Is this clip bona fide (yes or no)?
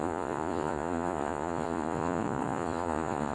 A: no